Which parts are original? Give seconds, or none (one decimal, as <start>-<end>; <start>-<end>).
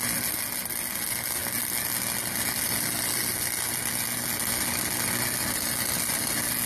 0.0-6.7